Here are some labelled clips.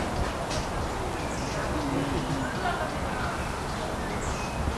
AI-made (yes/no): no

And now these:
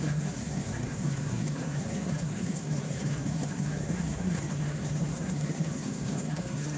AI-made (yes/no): yes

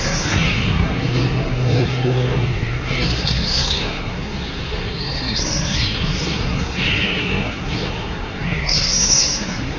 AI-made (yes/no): yes